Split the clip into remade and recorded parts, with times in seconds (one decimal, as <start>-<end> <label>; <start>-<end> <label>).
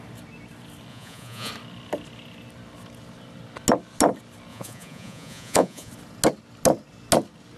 0.0-0.9 recorded; 0.9-1.5 remade; 1.5-4.5 recorded; 4.5-5.9 remade; 5.9-7.6 recorded